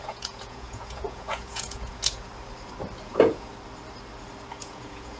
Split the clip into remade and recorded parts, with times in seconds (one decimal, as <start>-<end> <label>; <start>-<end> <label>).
0.0-2.3 remade; 2.3-3.0 recorded; 3.0-3.5 remade; 3.5-4.5 recorded; 4.5-5.2 remade